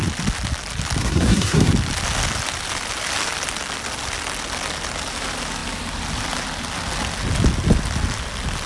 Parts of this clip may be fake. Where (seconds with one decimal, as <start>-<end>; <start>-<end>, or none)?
1.0-1.7